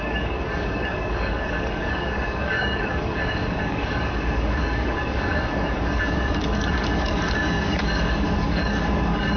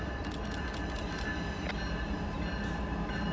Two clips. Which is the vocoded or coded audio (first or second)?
first